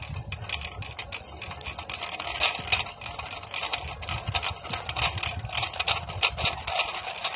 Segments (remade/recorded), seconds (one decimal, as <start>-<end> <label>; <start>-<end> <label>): 0.0-7.4 recorded